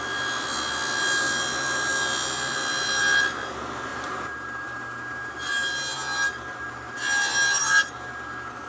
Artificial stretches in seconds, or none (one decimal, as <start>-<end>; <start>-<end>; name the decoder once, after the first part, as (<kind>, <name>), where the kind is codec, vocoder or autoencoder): 3.9-5.3 (vocoder, BigVGAN v2)

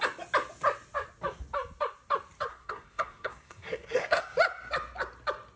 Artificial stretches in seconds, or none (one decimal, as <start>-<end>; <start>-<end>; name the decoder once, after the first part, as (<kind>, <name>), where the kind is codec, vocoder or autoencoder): 2.5-4.2 (codec, SNAC)